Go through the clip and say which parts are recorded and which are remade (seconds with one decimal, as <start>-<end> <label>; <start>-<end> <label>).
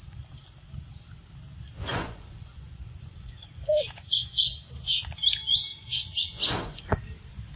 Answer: 0.0-1.9 recorded; 1.9-4.7 remade; 4.7-5.7 recorded; 5.7-6.8 remade; 6.8-7.6 recorded